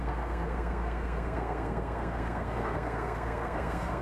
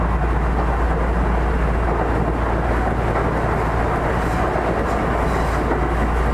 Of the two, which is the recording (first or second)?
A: second